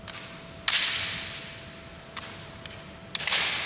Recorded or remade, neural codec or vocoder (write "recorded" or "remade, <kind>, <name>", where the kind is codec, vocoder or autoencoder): recorded